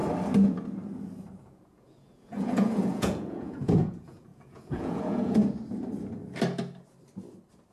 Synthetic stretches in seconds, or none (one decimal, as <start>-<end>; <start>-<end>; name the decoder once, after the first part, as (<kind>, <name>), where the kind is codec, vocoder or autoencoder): 1.4-5.4 (vocoder, Vocos)